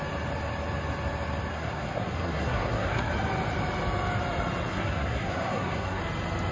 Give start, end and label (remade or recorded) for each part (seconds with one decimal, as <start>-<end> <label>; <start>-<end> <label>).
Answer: 0.0-1.5 recorded; 1.5-3.1 remade; 3.1-4.7 recorded; 4.7-6.0 remade; 6.0-6.5 recorded